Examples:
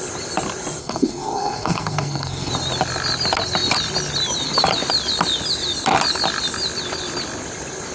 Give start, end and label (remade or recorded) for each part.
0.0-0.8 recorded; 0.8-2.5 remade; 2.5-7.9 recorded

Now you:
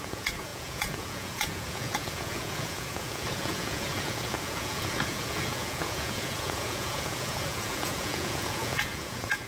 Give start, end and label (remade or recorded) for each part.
0.0-9.5 remade

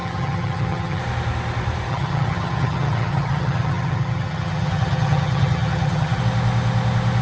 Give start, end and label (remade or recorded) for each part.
0.0-1.0 remade; 1.0-1.9 recorded; 1.9-6.2 remade; 6.2-7.2 recorded

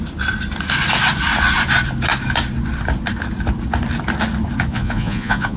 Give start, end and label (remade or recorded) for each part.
0.0-4.7 recorded; 4.7-5.6 remade

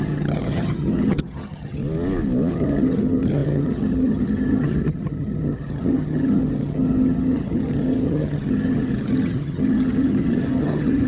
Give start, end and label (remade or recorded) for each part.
0.0-1.8 remade; 1.8-2.5 recorded; 2.5-11.1 remade

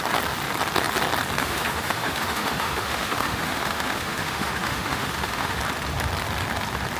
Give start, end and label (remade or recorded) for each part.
0.0-1.4 recorded; 1.4-5.6 remade; 5.6-7.0 recorded